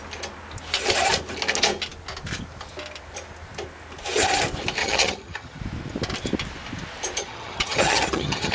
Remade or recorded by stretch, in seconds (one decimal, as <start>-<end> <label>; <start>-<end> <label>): 0.0-4.8 recorded; 4.8-5.6 remade; 5.6-7.2 recorded; 7.2-8.5 remade